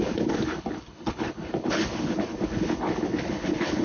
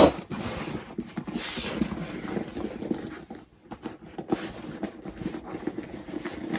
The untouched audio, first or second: second